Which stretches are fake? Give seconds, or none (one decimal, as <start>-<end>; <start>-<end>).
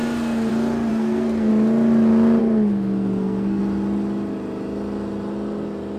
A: 0.9-1.5; 2.4-3.6